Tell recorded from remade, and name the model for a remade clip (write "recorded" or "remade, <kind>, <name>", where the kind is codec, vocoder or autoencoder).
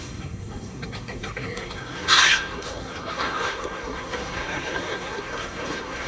remade, codec, SNAC